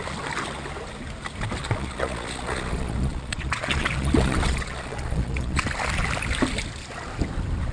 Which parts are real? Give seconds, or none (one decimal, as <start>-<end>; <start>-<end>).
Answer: 0.0-1.6; 5.6-7.7